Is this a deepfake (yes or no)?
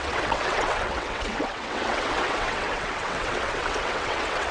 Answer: yes